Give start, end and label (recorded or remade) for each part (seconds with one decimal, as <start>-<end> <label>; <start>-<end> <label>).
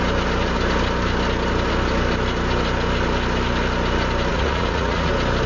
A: 0.0-4.3 recorded; 4.3-5.1 remade; 5.1-5.5 recorded